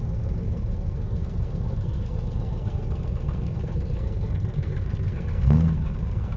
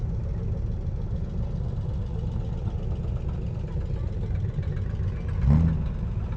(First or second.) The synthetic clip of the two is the first